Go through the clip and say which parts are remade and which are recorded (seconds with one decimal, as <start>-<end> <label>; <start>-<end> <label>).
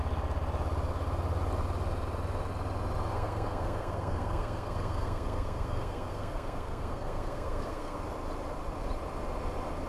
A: 0.0-3.1 recorded; 3.1-8.0 remade; 8.0-9.9 recorded